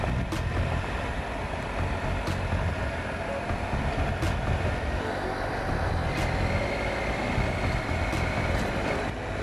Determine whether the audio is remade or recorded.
recorded